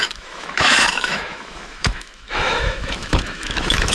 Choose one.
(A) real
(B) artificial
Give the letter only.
B